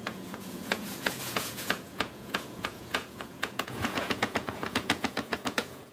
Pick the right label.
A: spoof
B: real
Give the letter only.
A